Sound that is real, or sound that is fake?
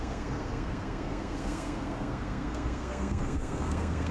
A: fake